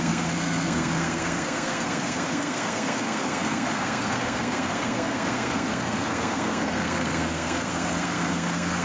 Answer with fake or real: fake